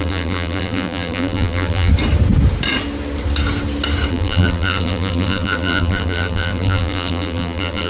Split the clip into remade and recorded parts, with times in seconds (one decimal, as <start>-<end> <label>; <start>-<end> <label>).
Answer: 0.0-1.9 remade; 1.9-4.1 recorded; 4.1-7.9 remade